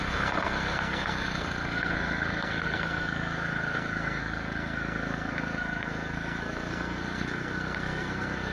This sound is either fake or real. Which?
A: fake